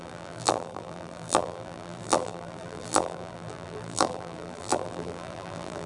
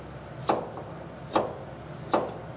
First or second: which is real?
second